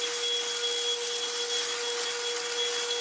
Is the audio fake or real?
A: real